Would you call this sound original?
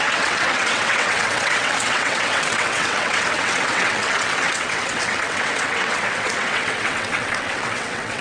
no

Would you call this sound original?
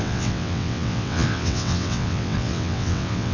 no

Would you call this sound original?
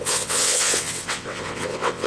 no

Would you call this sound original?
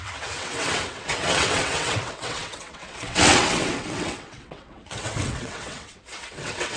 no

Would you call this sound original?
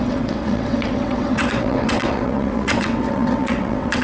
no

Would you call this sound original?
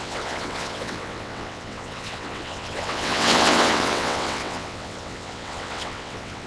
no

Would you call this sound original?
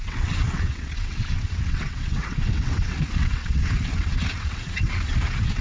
no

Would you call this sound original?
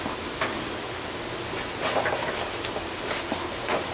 yes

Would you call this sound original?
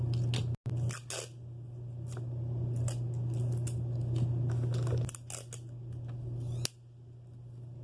yes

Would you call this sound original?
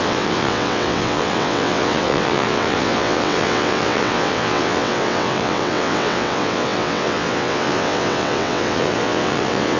no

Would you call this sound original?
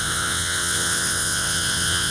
no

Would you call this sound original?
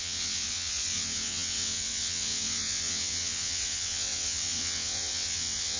no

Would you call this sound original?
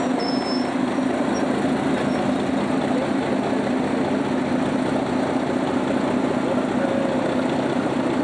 yes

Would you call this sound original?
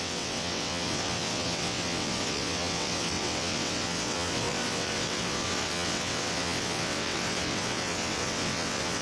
no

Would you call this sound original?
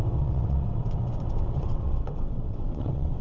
no